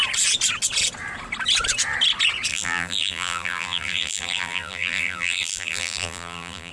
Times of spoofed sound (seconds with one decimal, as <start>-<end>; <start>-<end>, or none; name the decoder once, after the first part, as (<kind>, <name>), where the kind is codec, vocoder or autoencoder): 2.5-6.7 (vocoder, BigVGAN v2)